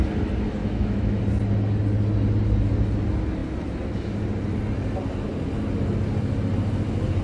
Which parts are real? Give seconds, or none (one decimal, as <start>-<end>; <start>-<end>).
0.0-0.6; 1.2-7.2

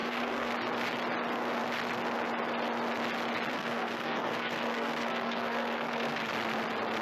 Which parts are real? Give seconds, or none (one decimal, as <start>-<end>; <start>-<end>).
0.5-3.5; 6.3-7.0

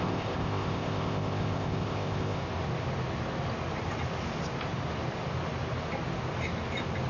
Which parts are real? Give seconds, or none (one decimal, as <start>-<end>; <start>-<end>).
2.4-7.1

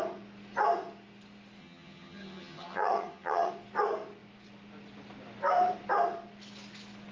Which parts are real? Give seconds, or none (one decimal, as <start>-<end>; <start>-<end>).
0.0-1.6; 3.5-7.1